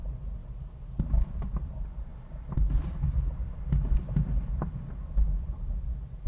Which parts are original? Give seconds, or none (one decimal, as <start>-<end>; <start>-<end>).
0.0-6.3